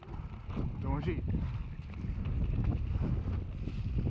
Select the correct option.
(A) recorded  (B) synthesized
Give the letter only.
A